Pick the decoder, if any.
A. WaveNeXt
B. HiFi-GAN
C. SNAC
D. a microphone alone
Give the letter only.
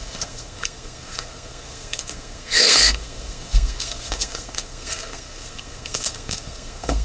C